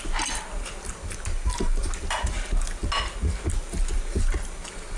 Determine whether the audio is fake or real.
real